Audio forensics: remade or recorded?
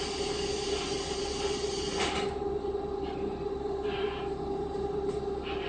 recorded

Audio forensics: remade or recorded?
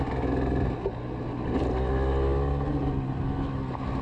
recorded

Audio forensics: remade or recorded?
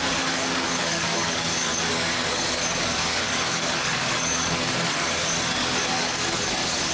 remade